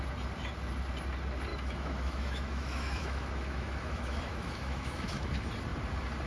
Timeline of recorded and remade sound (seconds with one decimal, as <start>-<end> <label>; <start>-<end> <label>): 0.0-1.5 recorded; 1.5-5.3 remade; 5.3-6.3 recorded